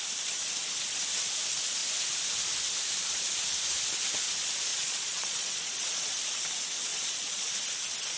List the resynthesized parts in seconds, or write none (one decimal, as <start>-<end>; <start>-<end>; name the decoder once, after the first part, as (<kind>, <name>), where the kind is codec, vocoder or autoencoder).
4.7-6.1 (vocoder, Vocos); 6.9-7.5